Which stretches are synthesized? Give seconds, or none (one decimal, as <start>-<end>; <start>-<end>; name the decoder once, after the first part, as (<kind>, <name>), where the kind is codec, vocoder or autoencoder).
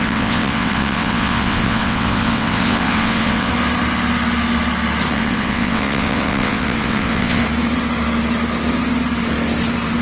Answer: 0.0-3.5 (vocoder, WaveNeXt); 5.1-7.4